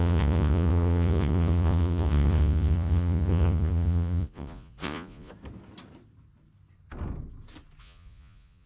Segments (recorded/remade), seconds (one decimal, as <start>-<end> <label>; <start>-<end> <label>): 0.0-5.3 remade; 5.3-7.8 recorded; 7.8-8.7 remade